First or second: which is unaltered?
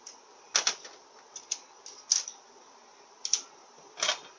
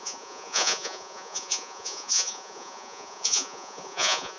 first